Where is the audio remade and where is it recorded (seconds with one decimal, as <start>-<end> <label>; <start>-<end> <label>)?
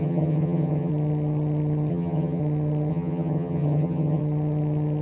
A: 0.0-0.9 remade; 0.9-1.9 recorded; 1.9-2.4 remade; 2.4-2.9 recorded; 2.9-4.2 remade; 4.2-5.0 recorded